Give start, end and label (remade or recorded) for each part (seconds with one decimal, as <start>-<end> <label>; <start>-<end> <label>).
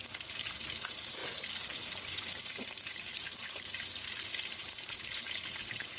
0.0-1.2 remade; 1.2-2.1 recorded; 2.1-6.0 remade